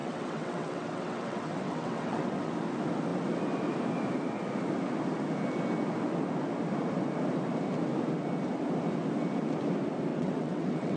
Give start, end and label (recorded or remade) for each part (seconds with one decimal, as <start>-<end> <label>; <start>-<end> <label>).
0.0-2.5 remade; 2.5-10.1 recorded; 10.1-11.0 remade